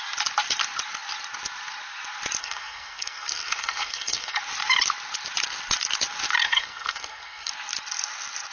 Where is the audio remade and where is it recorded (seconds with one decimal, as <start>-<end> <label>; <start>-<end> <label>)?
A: 0.0-2.4 recorded; 2.4-4.4 remade; 4.4-6.4 recorded; 6.4-7.5 remade; 7.5-8.5 recorded